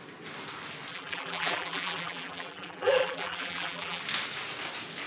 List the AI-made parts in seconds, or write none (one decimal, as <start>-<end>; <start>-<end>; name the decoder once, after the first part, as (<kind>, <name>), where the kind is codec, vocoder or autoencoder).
0.9-4.0 (vocoder, BigVGAN v2)